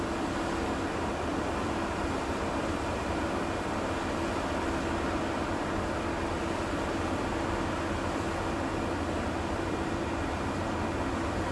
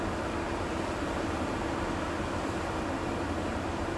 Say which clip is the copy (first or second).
second